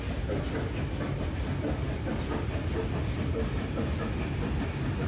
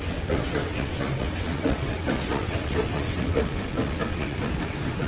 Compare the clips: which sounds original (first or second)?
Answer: first